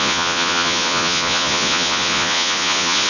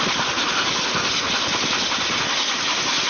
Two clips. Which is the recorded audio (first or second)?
second